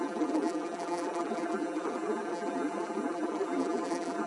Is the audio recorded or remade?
remade